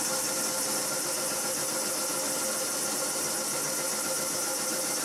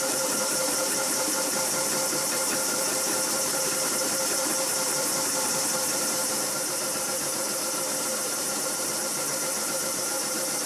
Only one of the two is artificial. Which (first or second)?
second